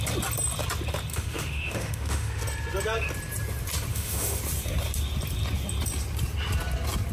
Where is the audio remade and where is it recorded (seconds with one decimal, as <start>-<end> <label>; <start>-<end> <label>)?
0.0-1.1 recorded; 1.1-2.4 remade; 2.4-3.9 recorded; 3.9-4.4 remade; 4.4-7.1 recorded